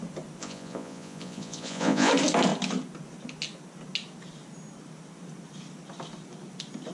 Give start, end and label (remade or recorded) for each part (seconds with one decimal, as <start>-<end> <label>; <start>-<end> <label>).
0.0-0.4 recorded; 0.4-2.1 remade; 2.1-6.9 recorded